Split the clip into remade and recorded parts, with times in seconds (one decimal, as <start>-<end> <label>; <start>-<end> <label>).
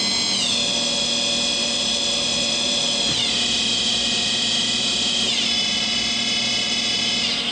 0.0-1.6 recorded; 1.6-5.9 remade; 5.9-7.5 recorded